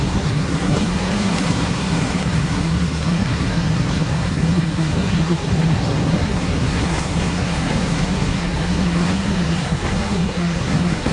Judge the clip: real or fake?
fake